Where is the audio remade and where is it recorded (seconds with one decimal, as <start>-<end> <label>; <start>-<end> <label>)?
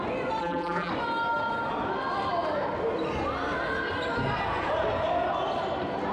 0.0-0.4 recorded; 0.4-0.9 remade; 0.9-6.1 recorded